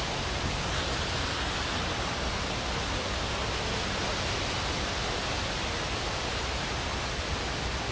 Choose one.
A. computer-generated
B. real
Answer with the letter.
B